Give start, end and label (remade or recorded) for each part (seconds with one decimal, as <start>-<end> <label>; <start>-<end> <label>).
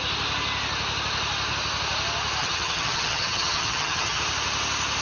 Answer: 0.0-2.4 recorded; 2.4-4.2 remade; 4.2-5.0 recorded